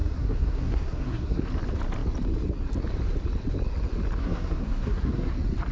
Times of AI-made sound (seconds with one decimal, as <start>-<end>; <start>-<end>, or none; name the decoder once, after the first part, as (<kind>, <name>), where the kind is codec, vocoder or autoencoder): 0.0-1.4 (codec, SNAC); 4.2-5.3